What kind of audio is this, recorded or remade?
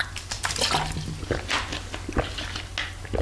recorded